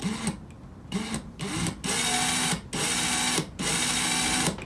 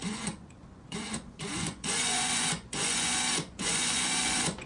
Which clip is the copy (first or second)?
second